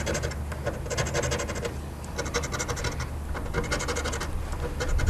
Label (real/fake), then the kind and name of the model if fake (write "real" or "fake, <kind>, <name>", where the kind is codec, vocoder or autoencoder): real